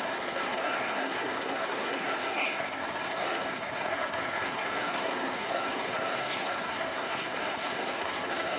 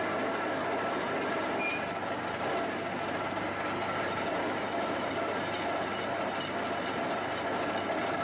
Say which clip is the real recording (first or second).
second